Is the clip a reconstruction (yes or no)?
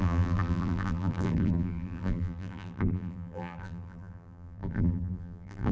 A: yes